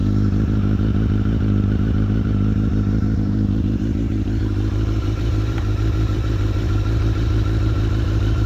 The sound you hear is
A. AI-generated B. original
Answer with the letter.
A